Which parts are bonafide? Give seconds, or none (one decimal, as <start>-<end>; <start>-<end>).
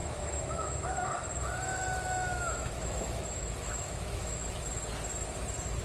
1.2-1.7; 4.6-5.8